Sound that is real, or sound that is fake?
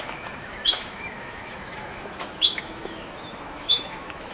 fake